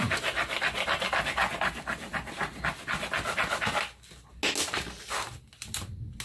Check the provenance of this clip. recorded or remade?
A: recorded